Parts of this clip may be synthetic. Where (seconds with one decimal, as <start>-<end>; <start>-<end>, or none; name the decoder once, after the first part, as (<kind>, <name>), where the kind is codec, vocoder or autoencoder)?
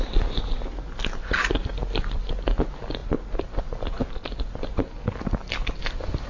none